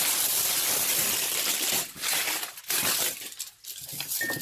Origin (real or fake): real